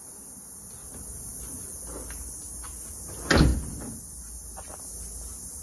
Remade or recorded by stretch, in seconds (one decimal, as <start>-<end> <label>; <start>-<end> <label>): 0.0-5.6 recorded